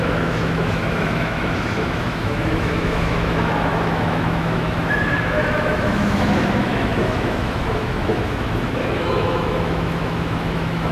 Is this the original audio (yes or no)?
no